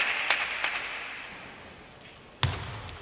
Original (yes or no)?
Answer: yes